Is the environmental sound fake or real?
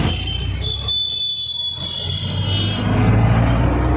real